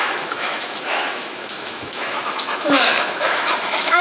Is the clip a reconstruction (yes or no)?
yes